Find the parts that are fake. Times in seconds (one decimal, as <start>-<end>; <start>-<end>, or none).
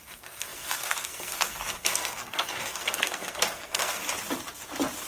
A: 0.0-4.0